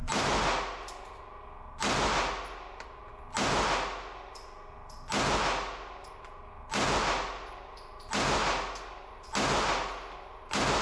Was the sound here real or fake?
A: real